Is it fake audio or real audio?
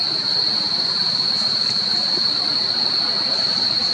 fake